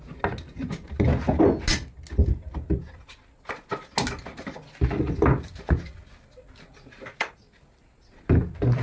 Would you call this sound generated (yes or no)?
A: no